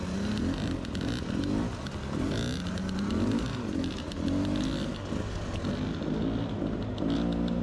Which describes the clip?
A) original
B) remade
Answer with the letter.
A